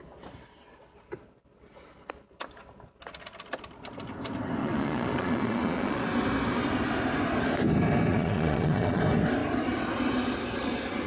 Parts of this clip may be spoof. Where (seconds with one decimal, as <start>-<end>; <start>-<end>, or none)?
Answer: 4.6-6.0; 8.1-9.0